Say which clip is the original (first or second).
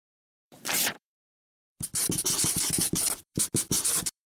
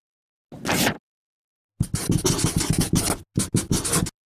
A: second